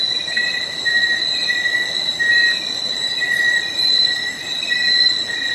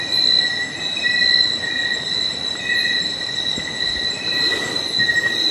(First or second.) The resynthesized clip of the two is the first